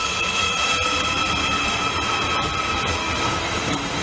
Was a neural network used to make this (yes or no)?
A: no